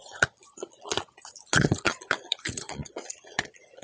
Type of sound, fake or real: fake